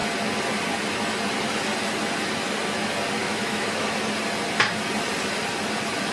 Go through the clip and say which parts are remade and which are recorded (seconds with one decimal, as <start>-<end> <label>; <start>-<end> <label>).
0.0-3.2 recorded; 3.2-3.9 remade; 3.9-6.1 recorded